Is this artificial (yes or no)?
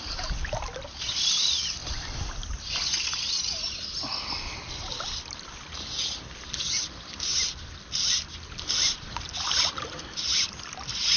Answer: no